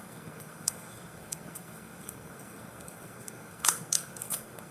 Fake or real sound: fake